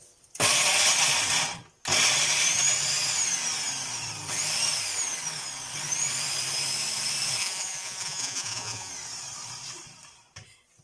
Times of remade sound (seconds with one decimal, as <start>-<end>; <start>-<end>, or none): 7.4-8.9